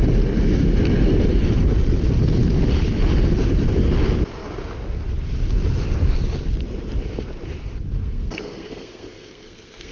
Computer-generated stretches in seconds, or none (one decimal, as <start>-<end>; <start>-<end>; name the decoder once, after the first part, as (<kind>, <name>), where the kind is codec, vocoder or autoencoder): 8.0-9.9 (codec, SNAC)

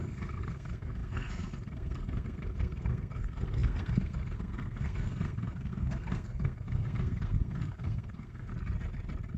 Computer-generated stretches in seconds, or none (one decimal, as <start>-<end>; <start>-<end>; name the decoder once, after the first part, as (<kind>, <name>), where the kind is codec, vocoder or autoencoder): 0.0-8.5 (codec, SNAC)